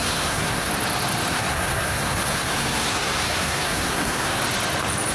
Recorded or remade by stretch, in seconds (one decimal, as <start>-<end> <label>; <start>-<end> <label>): 0.0-0.7 remade; 0.7-1.3 recorded; 1.3-4.4 remade; 4.4-5.1 recorded